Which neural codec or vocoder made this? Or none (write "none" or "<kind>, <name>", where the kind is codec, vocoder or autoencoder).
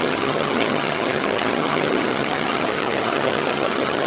vocoder, HiFi-GAN